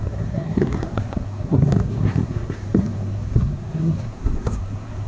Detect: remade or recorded remade